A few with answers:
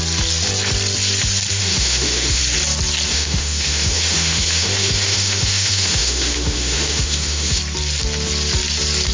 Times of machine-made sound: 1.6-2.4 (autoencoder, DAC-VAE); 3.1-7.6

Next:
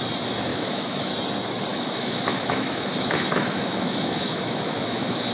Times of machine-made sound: 0.5-1.1 (autoencoder, DAC-VAE); 1.7-5.3

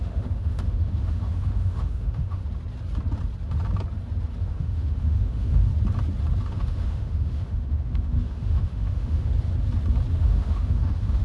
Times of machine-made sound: 0.0-2.4 (autoencoder, DAC-VAE); 4.4-5.7; 6.4-9.3; 10.1-11.2

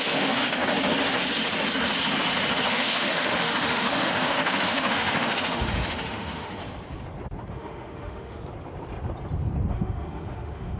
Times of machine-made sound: 0.0-0.6 (autoencoder, DAC-VAE); 2.7-6.6; 7.5-8.4; 9.7-10.8

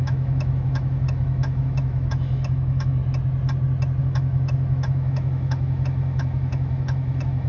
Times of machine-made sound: 0.0-3.0 (autoencoder, DAC-VAE); 4.0-7.5

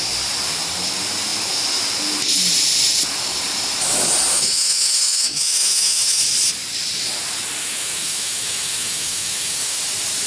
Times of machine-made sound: 4.3-6.2 (autoencoder, DAC-VAE); 7.6-9.8

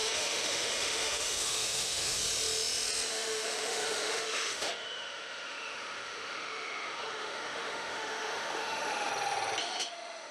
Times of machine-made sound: 0.0-2.2 (autoencoder, DAC-VAE); 3.1-9.1; 9.6-10.3

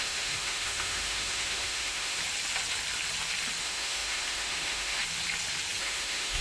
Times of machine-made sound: 0.0-2.2 (autoencoder, DAC-VAE); 3.6-5.0; 5.8-6.4